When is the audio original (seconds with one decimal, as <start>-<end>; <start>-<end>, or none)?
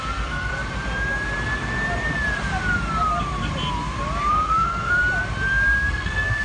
0.5-4.3; 5.0-5.9